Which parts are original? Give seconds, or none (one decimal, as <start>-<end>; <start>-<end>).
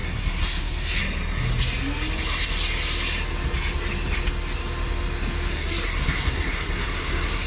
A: 1.0-5.5